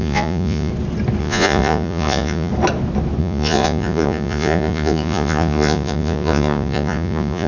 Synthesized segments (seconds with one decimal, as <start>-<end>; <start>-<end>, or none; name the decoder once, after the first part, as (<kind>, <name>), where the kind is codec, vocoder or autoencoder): 0.0-0.7 (vocoder, Vocos); 1.2-2.5; 3.2-7.5